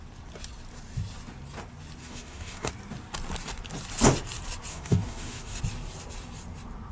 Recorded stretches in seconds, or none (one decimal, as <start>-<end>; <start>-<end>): 0.0-2.0; 2.7-4.7; 5.6-6.9